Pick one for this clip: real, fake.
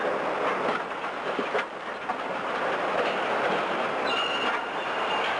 real